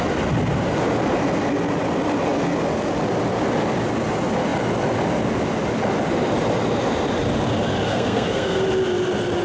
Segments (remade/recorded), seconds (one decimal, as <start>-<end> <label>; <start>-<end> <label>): 0.0-7.9 recorded; 7.9-8.6 remade; 8.6-9.4 recorded